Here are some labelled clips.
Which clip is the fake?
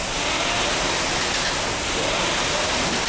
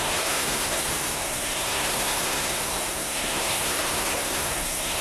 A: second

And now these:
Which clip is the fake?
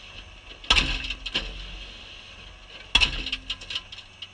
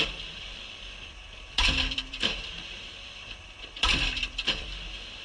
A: second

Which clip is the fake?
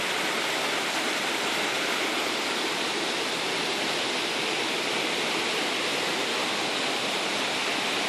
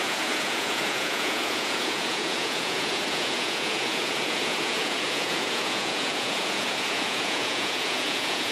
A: second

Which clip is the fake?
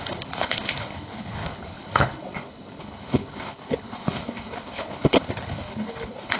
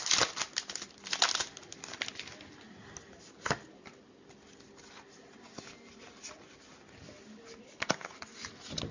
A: first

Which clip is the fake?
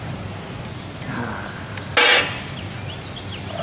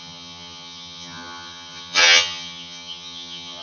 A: second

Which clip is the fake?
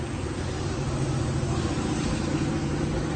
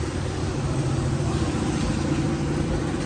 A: second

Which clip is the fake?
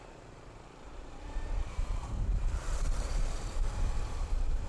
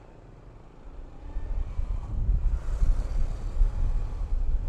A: first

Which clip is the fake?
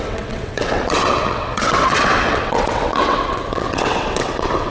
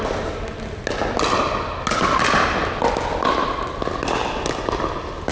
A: first